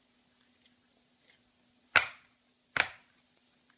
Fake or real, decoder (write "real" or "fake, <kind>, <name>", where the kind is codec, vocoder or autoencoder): real